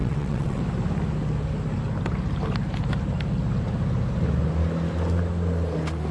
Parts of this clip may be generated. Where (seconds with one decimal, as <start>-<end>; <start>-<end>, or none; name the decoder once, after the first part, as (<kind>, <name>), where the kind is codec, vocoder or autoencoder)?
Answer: 0.0-0.6 (vocoder, WaveNeXt)